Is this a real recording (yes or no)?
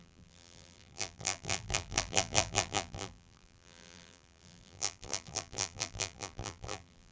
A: no